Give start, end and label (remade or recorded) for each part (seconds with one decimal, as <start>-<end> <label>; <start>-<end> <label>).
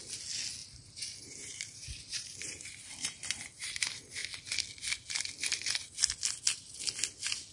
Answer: 0.0-0.6 recorded; 0.6-3.8 remade; 3.8-7.5 recorded